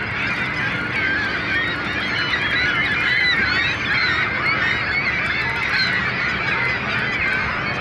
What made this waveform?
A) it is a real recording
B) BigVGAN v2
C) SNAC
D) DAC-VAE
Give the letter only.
A